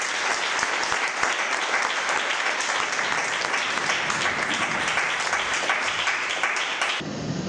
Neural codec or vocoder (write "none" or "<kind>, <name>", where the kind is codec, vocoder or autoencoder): none